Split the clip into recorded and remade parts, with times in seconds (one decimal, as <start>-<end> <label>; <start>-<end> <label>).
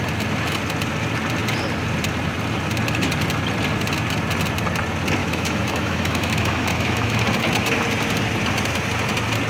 0.0-5.2 recorded; 5.2-7.2 remade; 7.2-9.5 recorded